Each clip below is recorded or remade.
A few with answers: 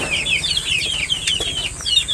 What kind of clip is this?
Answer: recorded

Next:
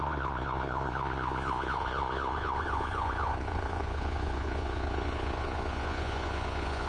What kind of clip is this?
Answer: remade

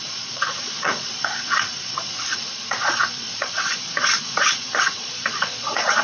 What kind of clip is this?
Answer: remade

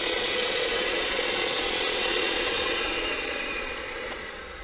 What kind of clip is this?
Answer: remade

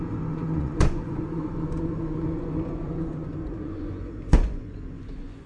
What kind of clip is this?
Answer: remade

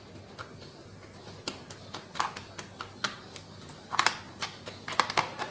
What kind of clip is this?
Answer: recorded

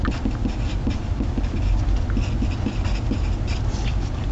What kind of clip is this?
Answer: recorded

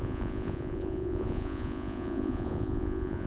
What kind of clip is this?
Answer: remade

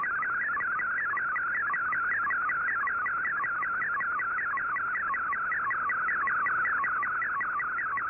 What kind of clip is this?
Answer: recorded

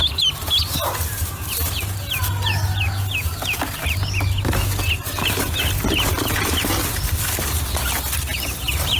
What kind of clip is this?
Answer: recorded